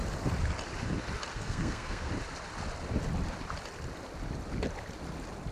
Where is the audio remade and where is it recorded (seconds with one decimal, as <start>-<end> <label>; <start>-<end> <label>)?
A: 0.0-1.3 recorded; 1.3-2.1 remade; 2.1-5.5 recorded